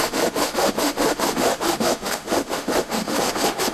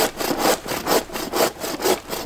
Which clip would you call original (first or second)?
second